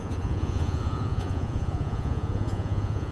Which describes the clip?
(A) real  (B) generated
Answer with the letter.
B